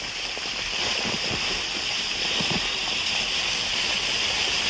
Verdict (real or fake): real